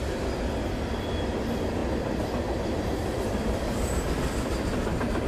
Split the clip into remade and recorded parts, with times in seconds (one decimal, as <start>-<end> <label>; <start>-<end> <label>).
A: 0.0-1.8 remade; 1.8-2.6 recorded; 2.6-5.3 remade